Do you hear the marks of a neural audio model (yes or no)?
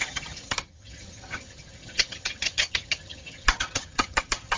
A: yes